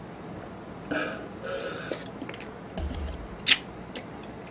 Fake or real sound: real